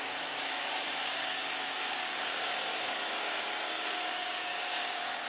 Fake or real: fake